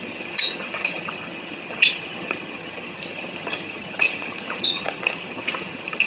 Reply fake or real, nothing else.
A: fake